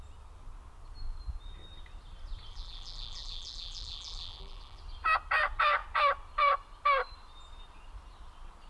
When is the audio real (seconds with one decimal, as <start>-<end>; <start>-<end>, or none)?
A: 0.0-2.5; 4.8-8.7